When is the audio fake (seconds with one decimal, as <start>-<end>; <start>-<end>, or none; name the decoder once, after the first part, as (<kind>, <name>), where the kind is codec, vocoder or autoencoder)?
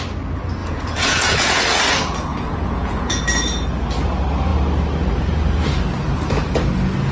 0.6-1.6 (vocoder, Vocos); 2.3-3.2